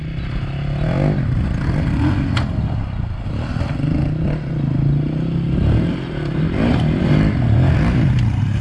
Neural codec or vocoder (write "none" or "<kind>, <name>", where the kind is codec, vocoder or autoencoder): none